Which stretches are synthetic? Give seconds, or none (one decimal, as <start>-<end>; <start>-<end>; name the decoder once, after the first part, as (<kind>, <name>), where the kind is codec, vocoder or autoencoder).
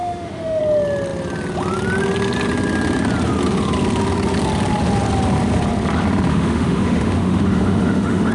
0.0-0.6 (autoencoder, DAC-VAE); 6.3-8.3